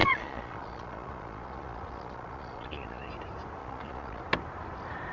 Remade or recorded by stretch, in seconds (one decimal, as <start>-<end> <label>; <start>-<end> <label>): 0.0-3.1 remade; 3.1-3.6 recorded; 3.6-4.2 remade; 4.2-5.1 recorded